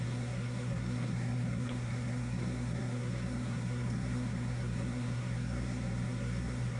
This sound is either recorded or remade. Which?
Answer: remade